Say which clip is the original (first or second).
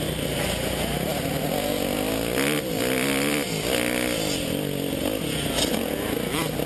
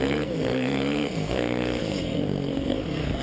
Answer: first